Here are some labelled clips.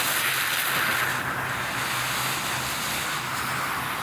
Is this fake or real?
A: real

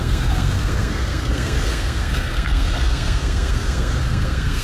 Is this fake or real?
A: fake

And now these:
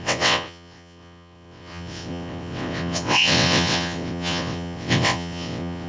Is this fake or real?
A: fake